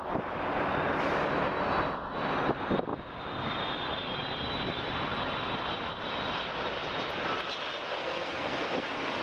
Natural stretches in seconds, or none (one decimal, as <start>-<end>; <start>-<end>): 0.0-7.9